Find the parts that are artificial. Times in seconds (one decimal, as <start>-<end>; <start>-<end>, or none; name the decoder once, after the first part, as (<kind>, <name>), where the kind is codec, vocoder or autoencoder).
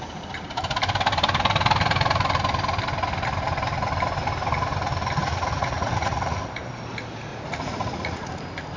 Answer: 5.2-6.6 (vocoder, Vocos); 7.3-8.2